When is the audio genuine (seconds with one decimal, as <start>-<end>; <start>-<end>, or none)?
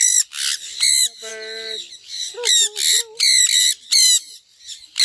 0.0-5.0